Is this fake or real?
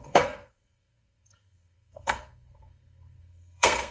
fake